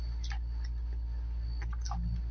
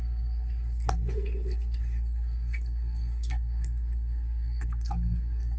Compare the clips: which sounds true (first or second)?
first